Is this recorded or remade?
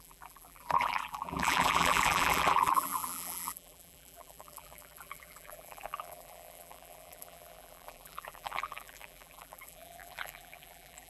remade